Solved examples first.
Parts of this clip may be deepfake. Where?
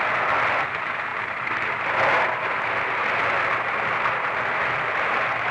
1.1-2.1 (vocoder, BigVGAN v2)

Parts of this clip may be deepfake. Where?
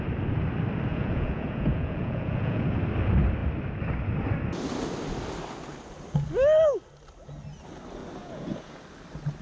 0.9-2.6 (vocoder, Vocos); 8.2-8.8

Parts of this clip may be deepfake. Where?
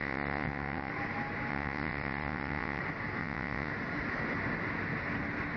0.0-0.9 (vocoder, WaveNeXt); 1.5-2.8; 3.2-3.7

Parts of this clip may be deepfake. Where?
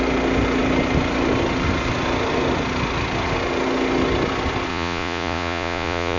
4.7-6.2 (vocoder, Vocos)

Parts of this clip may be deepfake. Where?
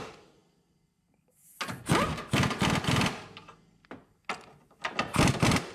none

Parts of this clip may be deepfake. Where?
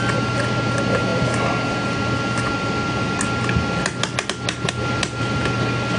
none